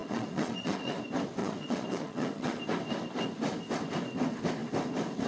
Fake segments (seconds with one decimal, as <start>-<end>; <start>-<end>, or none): 0.0-1.0; 1.4-2.6